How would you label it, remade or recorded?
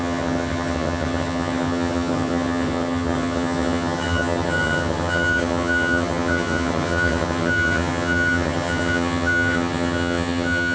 remade